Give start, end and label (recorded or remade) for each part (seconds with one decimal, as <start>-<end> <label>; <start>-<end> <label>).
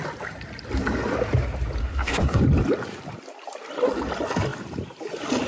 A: 0.0-1.8 recorded; 1.8-2.4 remade; 2.4-5.5 recorded